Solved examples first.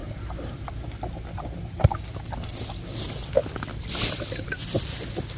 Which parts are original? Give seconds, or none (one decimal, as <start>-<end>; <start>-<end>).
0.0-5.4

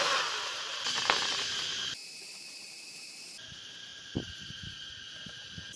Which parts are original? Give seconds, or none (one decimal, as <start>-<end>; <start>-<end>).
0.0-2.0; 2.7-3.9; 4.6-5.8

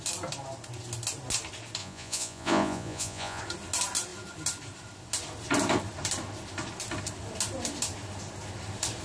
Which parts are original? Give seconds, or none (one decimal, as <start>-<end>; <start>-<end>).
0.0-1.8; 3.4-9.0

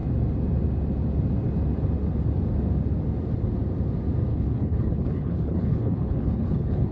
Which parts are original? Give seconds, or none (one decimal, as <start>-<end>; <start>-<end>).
0.0-4.3

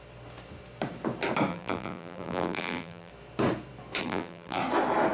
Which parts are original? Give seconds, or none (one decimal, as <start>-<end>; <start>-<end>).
0.0-1.5; 3.1-4.0; 4.6-5.1

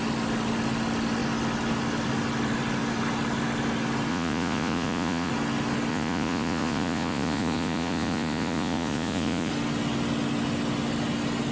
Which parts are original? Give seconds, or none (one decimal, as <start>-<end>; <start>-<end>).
0.0-4.1; 5.3-5.9; 9.5-11.5